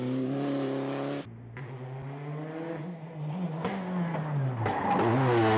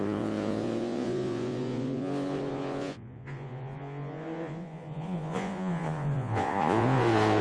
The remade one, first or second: second